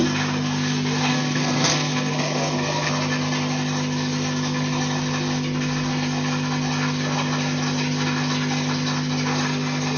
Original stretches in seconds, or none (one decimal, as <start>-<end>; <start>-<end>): 0.0-1.1; 2.9-10.0